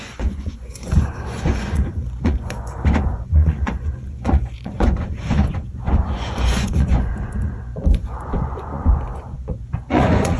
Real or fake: fake